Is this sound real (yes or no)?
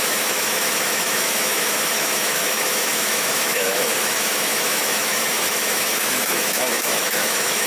no